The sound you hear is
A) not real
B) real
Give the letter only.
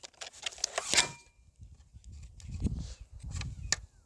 B